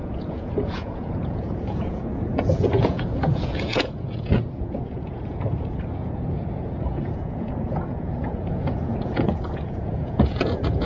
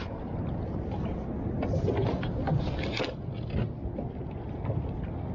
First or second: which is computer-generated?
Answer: first